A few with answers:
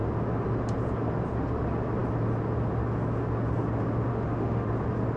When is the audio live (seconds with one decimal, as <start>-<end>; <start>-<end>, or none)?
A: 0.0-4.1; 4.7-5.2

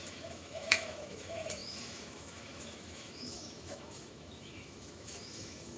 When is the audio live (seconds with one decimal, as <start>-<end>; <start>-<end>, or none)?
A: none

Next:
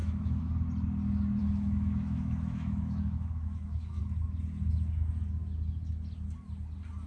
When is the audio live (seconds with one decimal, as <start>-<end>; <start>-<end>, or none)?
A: 0.5-1.4; 4.0-7.1